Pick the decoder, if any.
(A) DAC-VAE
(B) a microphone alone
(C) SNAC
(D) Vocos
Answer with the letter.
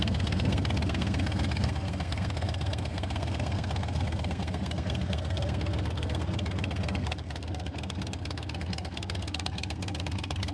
C